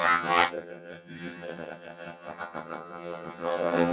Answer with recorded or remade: remade